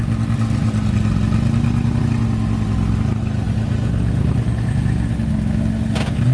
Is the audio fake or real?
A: real